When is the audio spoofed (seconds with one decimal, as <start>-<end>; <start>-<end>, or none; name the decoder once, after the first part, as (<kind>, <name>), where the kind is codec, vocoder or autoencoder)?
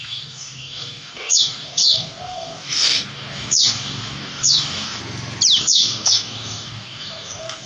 0.0-5.0 (codec, DAC); 5.6-7.7